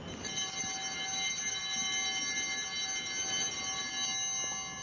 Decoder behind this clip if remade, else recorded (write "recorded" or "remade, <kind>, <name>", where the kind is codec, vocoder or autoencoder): recorded